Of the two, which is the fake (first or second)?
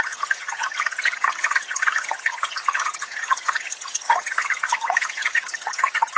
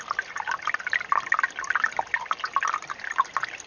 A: first